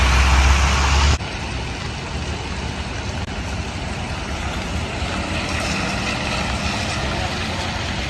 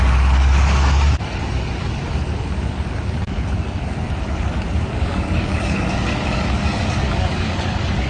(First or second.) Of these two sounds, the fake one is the second